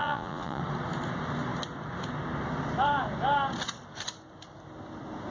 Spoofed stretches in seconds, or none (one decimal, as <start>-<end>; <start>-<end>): 0.0-0.6